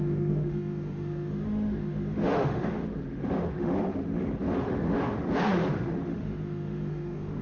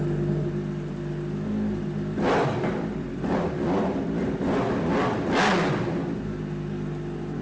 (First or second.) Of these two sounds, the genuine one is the second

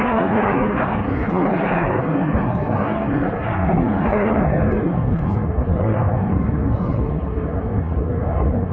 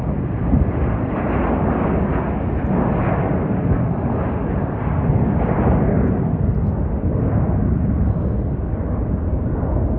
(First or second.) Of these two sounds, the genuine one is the second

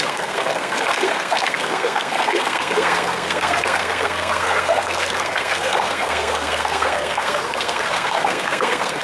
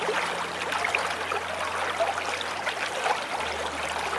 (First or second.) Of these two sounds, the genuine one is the second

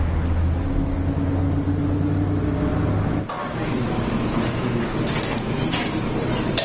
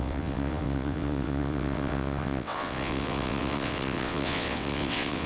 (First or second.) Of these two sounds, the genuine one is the first